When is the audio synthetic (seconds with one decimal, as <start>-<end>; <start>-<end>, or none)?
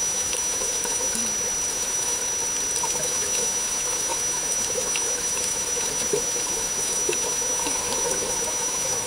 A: 0.0-1.2; 1.7-2.2; 2.8-9.1